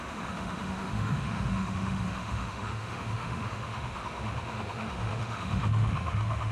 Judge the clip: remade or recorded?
remade